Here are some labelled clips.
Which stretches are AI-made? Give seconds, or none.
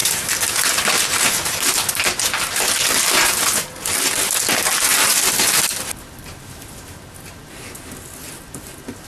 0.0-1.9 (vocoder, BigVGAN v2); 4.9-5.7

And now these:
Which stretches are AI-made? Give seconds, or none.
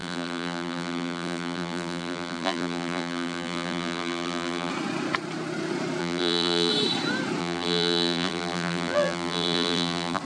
0.0-4.7 (vocoder, BigVGAN v2); 6.0-6.7; 7.4-10.2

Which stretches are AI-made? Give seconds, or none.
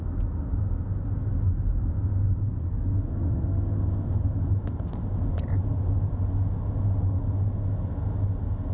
none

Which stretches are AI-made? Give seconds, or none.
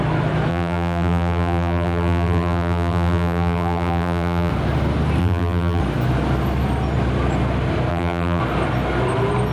0.5-4.5 (vocoder, BigVGAN v2); 5.2-5.8; 7.9-8.4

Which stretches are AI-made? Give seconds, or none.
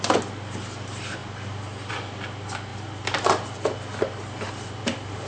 none